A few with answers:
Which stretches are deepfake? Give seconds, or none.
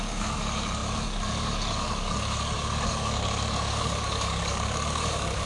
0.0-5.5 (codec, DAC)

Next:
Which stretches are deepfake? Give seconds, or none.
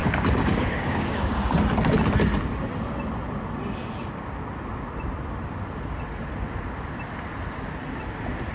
0.0-1.6 (codec, DAC)